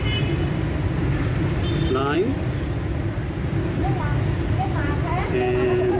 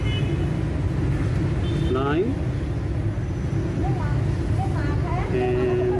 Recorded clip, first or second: second